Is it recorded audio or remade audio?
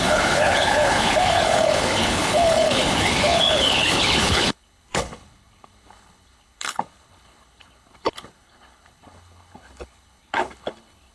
remade